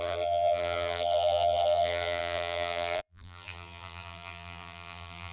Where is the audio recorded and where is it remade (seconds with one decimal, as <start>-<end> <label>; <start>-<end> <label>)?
0.0-5.3 remade